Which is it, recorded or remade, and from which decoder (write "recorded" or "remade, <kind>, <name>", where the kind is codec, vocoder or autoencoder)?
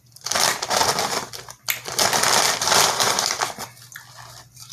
recorded